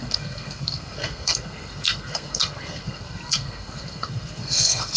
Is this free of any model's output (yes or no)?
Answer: no